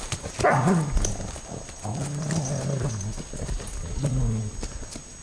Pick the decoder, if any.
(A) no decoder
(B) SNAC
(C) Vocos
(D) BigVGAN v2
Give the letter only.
A